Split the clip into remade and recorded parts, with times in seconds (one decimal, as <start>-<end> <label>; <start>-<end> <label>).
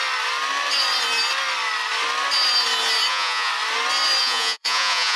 0.0-3.1 recorded; 3.1-3.5 remade; 3.5-4.2 recorded; 4.2-5.2 remade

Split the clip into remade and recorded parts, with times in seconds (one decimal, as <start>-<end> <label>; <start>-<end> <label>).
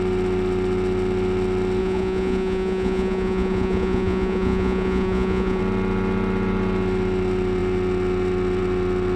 0.0-1.8 recorded; 1.8-5.6 remade; 5.6-9.2 recorded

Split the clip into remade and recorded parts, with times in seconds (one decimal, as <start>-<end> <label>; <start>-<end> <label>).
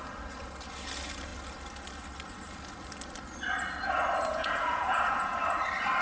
0.0-4.3 recorded; 4.3-5.4 remade; 5.4-6.0 recorded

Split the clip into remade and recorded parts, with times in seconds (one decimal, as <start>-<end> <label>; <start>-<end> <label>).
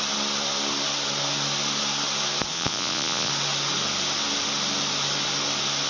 0.0-2.5 recorded; 2.5-3.3 remade; 3.3-5.9 recorded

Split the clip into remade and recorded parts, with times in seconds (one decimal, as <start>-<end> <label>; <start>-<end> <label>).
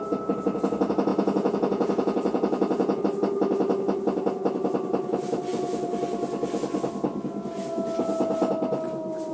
0.0-1.1 recorded; 1.1-3.0 remade; 3.0-9.3 recorded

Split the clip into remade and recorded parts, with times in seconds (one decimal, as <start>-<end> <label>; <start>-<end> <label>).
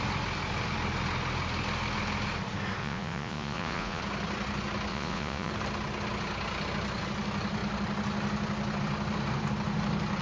0.0-2.8 recorded; 2.8-4.0 remade; 4.0-4.9 recorded; 4.9-5.5 remade; 5.5-10.2 recorded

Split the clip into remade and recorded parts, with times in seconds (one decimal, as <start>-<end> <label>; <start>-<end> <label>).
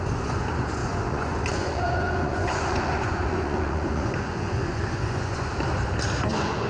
0.0-5.5 remade; 5.5-6.3 recorded; 6.3-6.7 remade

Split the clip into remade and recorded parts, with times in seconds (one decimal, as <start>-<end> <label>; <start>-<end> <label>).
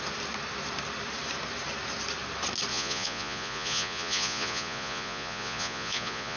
0.0-2.7 recorded; 2.7-6.4 remade